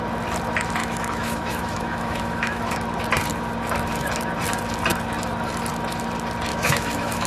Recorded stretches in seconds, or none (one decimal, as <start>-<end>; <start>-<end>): 0.0-0.8; 2.6-6.5